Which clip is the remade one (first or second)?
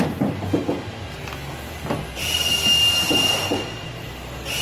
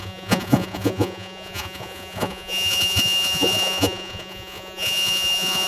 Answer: second